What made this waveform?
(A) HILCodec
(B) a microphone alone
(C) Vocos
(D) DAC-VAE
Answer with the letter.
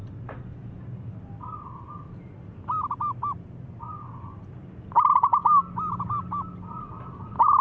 B